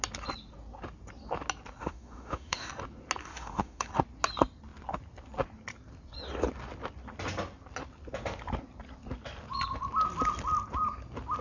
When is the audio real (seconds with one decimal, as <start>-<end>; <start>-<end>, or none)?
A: 0.0-1.8; 2.7-3.2; 3.9-11.4